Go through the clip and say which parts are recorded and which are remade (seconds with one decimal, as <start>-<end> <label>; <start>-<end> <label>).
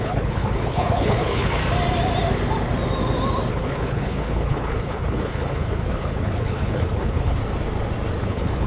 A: 0.0-1.6 remade; 1.6-3.5 recorded; 3.5-7.4 remade; 7.4-8.2 recorded; 8.2-8.7 remade